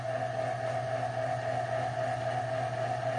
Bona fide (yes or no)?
yes